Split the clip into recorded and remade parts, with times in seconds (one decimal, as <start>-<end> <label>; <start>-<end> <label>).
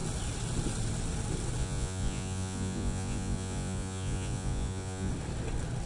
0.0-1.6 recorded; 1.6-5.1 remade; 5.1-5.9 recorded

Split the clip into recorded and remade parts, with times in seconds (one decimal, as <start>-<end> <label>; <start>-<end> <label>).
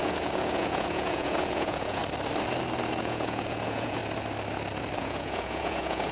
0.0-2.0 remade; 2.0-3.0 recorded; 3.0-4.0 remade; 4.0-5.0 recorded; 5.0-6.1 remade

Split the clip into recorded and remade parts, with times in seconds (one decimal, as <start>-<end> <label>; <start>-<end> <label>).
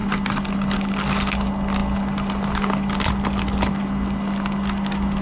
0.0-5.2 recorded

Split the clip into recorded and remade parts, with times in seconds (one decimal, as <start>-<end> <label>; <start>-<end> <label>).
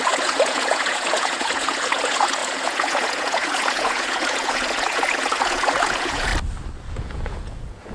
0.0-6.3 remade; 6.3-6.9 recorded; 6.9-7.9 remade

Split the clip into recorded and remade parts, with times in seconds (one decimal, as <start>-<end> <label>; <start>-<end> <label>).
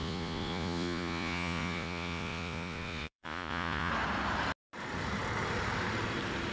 0.0-3.9 remade; 3.9-6.5 recorded